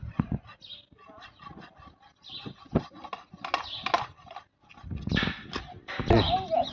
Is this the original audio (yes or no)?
yes